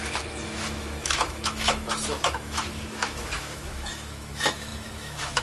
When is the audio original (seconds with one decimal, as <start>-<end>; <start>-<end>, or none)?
none